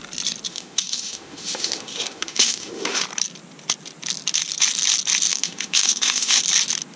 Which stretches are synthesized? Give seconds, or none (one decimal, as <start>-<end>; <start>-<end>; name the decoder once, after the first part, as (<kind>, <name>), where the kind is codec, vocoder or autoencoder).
0.5-3.0 (autoencoder, DAC-VAE); 5.3-6.4